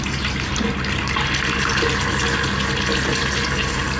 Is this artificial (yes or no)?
no